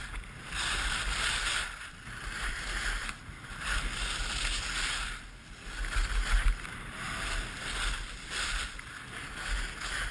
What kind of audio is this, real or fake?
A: real